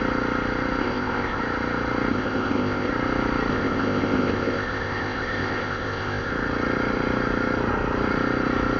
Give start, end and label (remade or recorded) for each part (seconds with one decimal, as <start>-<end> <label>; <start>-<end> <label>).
0.0-0.8 recorded; 0.8-1.4 remade; 1.4-2.1 recorded; 2.1-2.9 remade; 2.9-3.5 recorded; 3.5-6.3 remade; 6.3-8.8 recorded